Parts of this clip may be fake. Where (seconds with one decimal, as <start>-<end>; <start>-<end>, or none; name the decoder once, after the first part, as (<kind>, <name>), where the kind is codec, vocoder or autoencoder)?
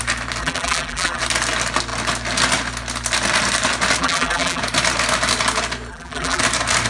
0.4-1.2 (vocoder, BigVGAN v2); 4.0-4.6; 5.9-6.4